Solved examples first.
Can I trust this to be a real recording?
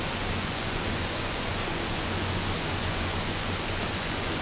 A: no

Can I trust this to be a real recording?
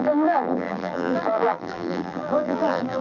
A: no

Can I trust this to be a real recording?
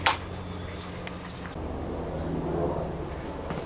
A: yes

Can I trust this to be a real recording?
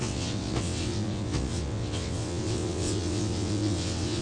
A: no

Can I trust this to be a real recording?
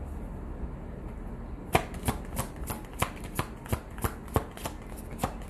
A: yes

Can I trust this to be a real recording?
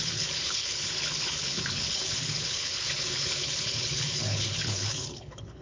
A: no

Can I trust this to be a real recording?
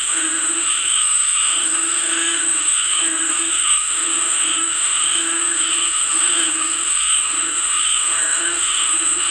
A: no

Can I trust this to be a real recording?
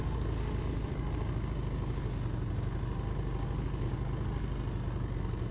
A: yes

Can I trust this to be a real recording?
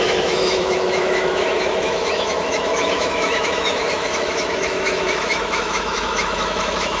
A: no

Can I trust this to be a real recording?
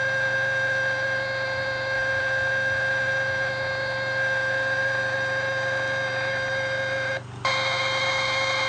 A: yes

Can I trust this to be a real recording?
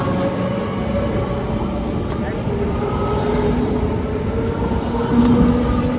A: yes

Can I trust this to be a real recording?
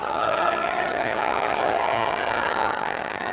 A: no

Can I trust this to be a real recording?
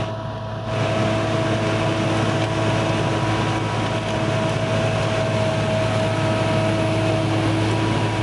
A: yes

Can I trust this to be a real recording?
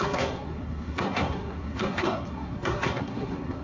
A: no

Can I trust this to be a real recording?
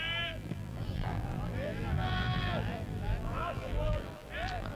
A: no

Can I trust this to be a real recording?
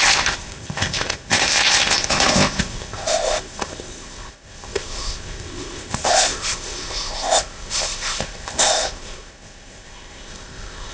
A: no